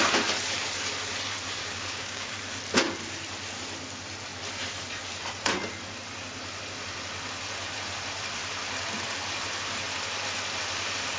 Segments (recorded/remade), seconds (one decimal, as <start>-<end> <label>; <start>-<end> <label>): 0.0-1.6 recorded; 1.6-2.3 remade; 2.3-11.2 recorded